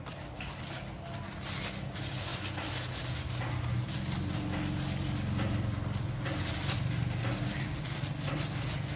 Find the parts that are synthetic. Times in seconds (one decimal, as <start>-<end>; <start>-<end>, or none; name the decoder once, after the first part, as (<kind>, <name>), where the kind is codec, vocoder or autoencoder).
none